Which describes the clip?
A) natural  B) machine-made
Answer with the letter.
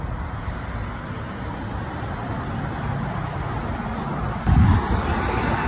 A